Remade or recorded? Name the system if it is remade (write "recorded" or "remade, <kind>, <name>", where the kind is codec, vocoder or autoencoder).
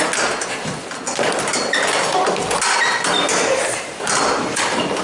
recorded